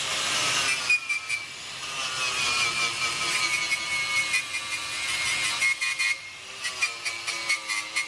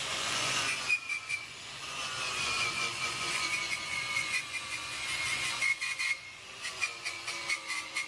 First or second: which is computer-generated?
second